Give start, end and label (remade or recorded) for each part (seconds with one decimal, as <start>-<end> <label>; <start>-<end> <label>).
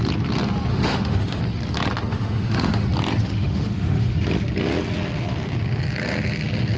0.0-0.7 recorded; 0.7-1.4 remade; 1.4-2.1 recorded; 2.1-2.8 remade; 2.8-3.2 recorded; 3.2-4.1 remade; 4.1-6.8 recorded